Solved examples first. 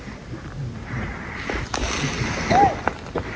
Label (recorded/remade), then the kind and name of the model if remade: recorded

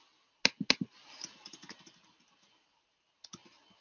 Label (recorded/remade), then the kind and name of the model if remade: recorded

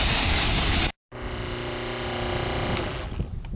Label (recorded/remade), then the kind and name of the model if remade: recorded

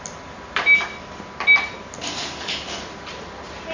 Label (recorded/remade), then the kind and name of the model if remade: recorded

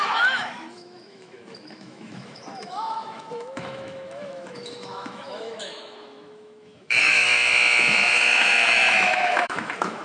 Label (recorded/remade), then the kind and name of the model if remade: remade, autoencoder, DAC-VAE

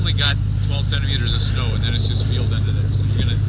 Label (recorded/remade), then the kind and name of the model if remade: recorded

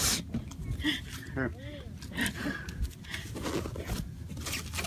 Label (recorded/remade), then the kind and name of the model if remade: recorded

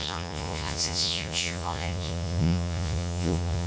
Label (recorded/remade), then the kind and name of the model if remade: remade, vocoder, Vocos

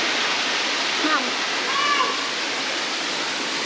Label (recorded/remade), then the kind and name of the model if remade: recorded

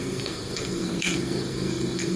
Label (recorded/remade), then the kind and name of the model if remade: remade, codec, SNAC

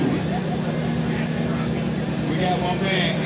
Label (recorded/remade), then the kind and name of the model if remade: recorded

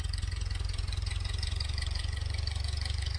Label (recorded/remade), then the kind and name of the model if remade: remade, vocoder, Vocos